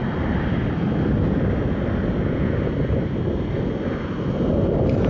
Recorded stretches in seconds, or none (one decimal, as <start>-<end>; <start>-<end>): 0.0-5.1